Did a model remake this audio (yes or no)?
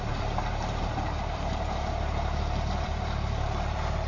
yes